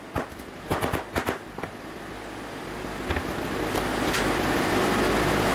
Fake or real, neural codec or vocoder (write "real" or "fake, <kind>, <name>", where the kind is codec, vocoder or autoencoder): real